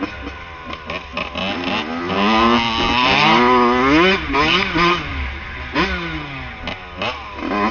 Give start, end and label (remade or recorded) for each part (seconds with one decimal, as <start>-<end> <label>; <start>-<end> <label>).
0.0-7.7 recorded